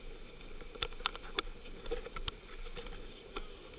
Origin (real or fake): real